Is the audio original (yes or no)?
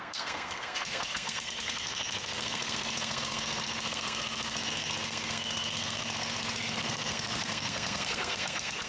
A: no